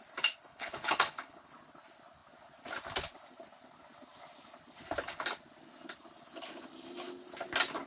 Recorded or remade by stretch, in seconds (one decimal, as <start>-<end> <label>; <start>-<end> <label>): 0.0-0.5 recorded; 0.5-1.4 remade; 1.4-7.9 recorded